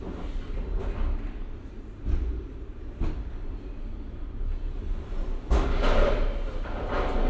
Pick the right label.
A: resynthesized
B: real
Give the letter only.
B